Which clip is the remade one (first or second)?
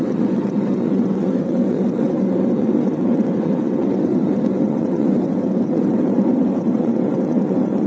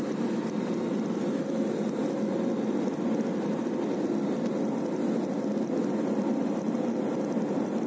first